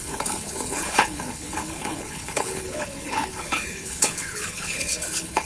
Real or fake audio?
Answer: fake